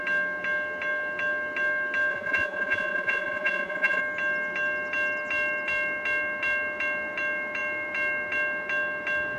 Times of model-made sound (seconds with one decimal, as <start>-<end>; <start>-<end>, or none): 2.1-4.0